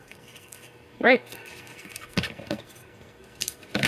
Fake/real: fake